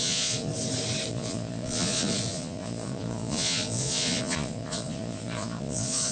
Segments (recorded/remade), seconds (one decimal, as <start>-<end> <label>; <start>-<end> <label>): 0.0-0.5 remade; 0.5-1.1 recorded; 1.1-6.1 remade